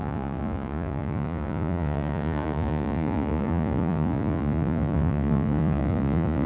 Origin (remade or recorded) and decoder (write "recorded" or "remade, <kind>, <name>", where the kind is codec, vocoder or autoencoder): remade, vocoder, Vocos